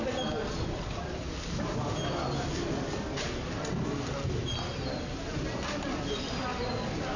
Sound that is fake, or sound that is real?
real